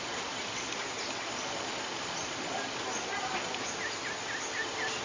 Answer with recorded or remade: recorded